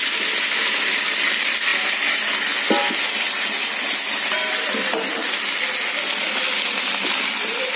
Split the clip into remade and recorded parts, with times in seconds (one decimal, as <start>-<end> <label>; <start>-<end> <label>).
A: 0.0-7.8 recorded

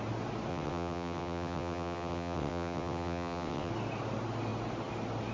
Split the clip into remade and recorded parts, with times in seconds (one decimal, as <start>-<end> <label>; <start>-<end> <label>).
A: 0.0-0.5 recorded; 0.5-3.7 remade; 3.7-5.3 recorded

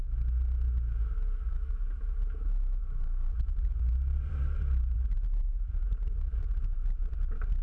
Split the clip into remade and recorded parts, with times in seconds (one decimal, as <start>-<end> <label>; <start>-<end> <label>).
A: 0.0-2.8 recorded; 2.8-7.0 remade; 7.0-7.6 recorded

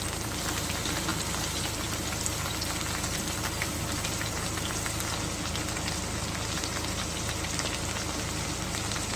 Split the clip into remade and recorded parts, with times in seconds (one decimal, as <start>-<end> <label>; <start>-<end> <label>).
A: 0.0-9.2 recorded

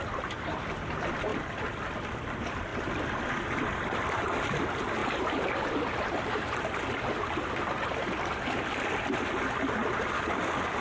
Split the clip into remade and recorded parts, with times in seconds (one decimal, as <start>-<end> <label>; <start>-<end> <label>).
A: 0.0-1.3 remade; 1.3-1.8 recorded; 1.8-10.8 remade